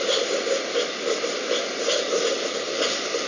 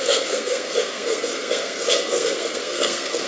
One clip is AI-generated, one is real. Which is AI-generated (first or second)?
second